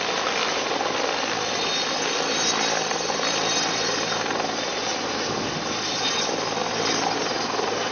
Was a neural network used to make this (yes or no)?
no